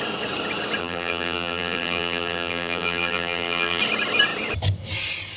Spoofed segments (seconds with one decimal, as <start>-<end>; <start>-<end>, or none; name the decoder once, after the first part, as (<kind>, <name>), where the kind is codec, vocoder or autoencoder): 0.8-3.8 (vocoder, BigVGAN v2)